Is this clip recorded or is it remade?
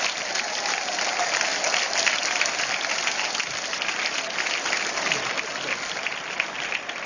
recorded